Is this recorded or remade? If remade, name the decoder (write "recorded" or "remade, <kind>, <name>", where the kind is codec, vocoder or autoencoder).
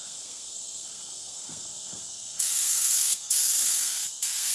remade, codec, SNAC